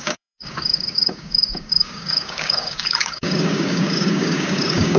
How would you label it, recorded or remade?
remade